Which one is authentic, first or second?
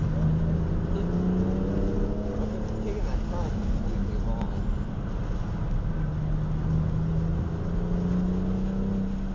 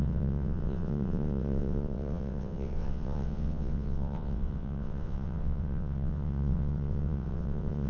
first